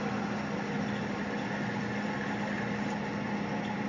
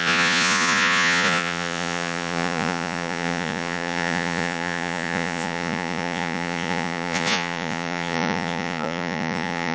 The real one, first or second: first